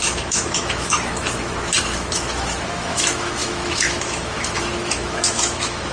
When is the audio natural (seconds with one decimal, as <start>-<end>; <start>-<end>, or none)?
none